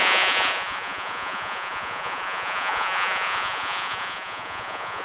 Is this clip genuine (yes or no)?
no